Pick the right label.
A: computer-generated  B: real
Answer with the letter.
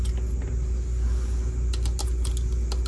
B